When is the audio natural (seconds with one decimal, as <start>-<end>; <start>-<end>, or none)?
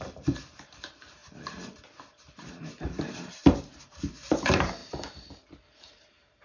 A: 1.2-2.3